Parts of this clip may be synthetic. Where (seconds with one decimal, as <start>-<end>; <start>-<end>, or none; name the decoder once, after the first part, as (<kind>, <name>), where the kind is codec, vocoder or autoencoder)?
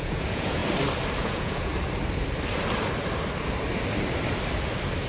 0.0-0.6 (vocoder, Vocos); 1.2-1.7